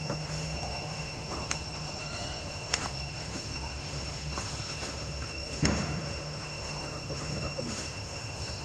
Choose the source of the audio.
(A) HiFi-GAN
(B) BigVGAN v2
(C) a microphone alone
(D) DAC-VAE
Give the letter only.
D